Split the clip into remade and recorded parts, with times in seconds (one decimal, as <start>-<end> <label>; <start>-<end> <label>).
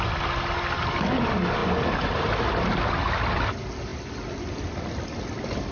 0.0-5.7 recorded